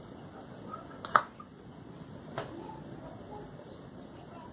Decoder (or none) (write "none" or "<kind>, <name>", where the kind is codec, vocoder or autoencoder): none